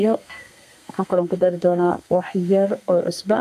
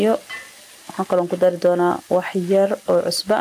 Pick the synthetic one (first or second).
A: first